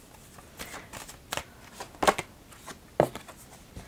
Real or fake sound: real